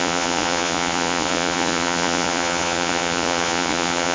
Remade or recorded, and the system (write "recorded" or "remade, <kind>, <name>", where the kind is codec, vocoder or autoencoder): remade, vocoder, Vocos